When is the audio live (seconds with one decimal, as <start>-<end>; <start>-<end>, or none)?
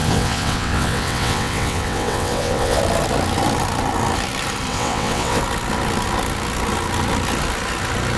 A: 2.8-4.7; 5.4-8.2